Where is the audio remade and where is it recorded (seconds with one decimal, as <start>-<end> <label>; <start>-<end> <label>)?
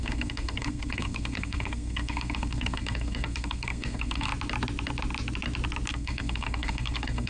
0.0-4.3 remade; 4.3-5.9 recorded; 5.9-7.3 remade